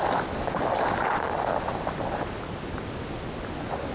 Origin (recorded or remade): recorded